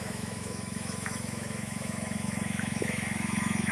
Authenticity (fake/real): fake